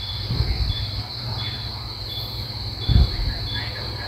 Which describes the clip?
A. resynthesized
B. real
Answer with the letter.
A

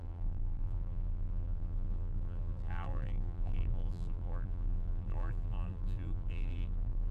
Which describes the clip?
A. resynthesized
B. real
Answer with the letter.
A